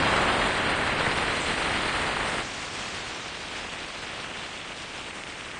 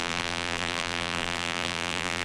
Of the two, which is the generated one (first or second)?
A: second